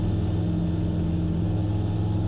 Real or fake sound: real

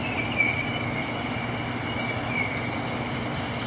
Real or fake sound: real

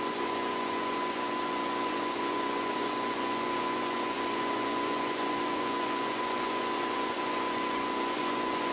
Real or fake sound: fake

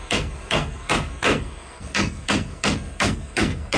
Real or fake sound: fake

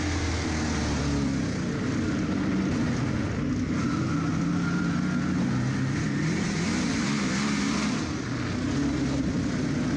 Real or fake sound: real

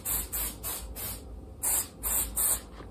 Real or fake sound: real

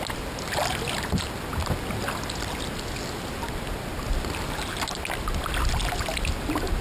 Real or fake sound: real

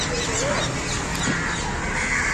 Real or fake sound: real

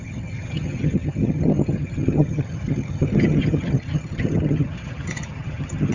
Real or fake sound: fake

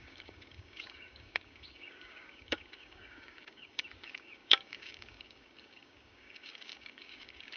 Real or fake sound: fake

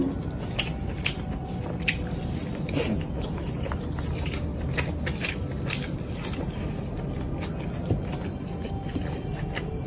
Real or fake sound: real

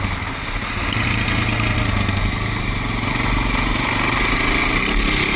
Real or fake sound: real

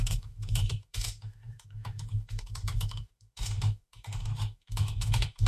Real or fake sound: fake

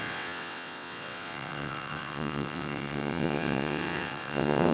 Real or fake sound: fake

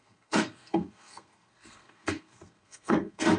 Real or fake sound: fake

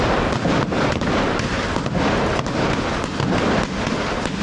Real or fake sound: real